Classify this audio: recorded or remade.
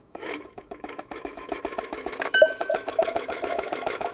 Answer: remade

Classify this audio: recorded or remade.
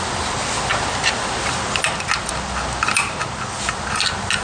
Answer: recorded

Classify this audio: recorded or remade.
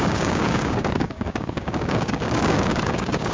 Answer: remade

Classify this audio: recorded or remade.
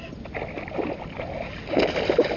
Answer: recorded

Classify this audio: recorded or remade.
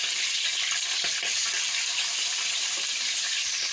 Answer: recorded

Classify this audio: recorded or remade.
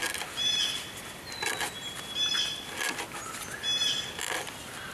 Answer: recorded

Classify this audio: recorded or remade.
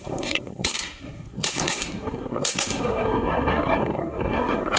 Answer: remade